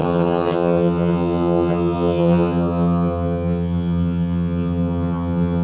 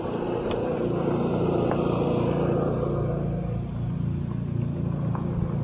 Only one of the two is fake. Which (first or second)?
first